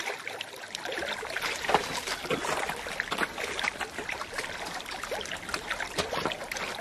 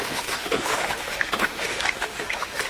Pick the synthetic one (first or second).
second